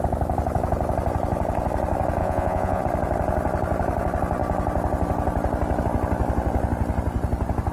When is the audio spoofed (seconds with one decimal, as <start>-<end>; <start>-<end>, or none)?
2.2-2.8